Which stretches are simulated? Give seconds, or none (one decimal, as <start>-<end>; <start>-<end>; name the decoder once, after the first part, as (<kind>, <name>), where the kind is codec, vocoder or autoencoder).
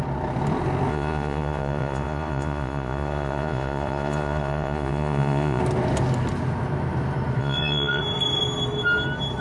0.9-5.6 (vocoder, Vocos); 7.4-8.0